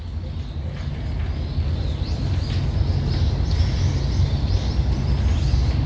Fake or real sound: real